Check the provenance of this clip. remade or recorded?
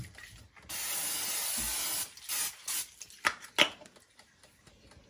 recorded